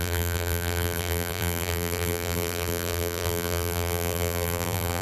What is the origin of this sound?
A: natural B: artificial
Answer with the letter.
B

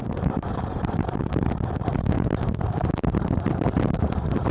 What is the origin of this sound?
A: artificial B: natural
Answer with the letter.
A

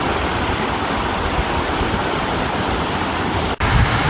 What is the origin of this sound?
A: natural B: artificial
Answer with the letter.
B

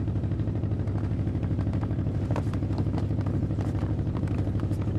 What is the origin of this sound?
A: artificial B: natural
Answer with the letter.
A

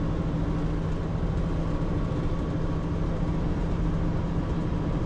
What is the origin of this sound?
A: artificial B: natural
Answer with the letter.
B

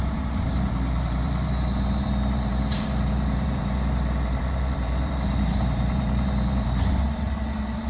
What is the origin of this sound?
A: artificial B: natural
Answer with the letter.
A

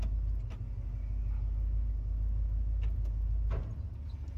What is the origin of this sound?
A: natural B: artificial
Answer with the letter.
A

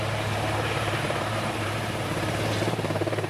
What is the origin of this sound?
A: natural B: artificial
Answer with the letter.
B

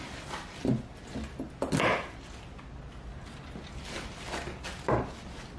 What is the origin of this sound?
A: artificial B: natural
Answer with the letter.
B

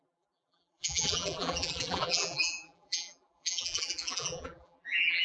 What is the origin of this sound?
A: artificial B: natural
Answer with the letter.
A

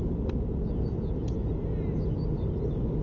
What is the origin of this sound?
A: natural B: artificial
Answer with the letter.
A